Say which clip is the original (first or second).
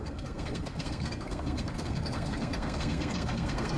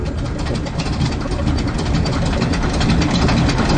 second